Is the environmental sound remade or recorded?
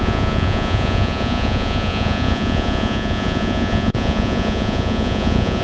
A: remade